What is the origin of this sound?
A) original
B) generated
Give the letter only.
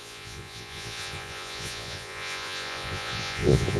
B